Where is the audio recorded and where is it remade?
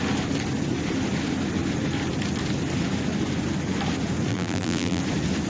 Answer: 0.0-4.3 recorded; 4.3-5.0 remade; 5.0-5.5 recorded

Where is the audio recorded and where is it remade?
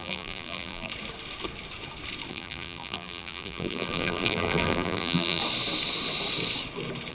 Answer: 0.0-0.9 remade; 0.9-2.3 recorded; 2.3-5.4 remade; 5.4-7.1 recorded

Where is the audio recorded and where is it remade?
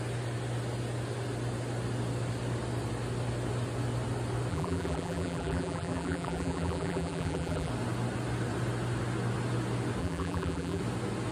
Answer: 0.0-4.5 recorded; 4.5-7.7 remade; 7.7-10.0 recorded; 10.0-10.8 remade; 10.8-11.3 recorded